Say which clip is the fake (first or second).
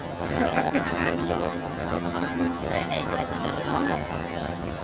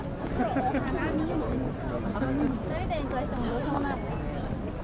first